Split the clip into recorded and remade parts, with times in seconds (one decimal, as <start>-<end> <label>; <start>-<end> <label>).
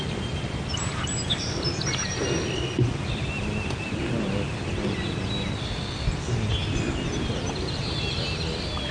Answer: 0.0-8.9 recorded